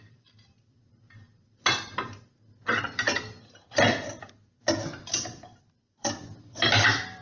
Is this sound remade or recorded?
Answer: remade